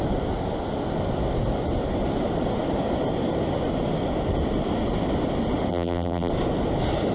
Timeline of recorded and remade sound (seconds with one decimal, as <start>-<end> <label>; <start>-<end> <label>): 0.0-5.7 recorded; 5.7-6.3 remade; 6.3-7.1 recorded